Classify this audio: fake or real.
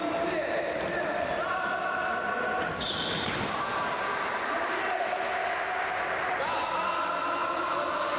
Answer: real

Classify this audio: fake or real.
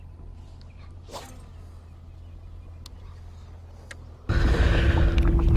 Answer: real